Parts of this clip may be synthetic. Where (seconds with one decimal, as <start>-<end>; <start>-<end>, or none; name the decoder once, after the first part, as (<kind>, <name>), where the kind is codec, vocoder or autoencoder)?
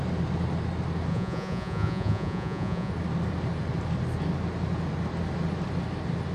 1.1-2.9 (vocoder, Vocos)